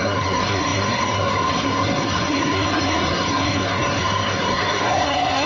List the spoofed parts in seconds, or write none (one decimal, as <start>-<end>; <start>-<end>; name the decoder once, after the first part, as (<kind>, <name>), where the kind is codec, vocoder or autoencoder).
0.0-5.5 (codec, SNAC)